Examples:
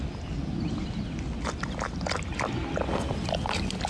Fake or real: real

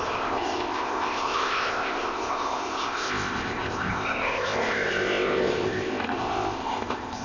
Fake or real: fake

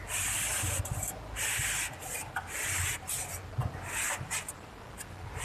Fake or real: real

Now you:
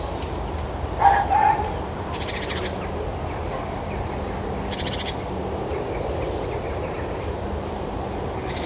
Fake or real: real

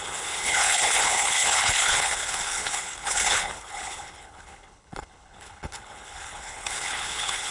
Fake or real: fake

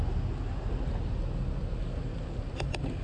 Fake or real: real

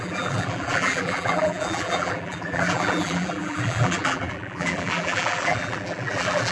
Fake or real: fake